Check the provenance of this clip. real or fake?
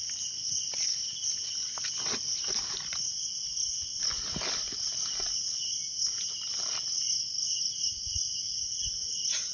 real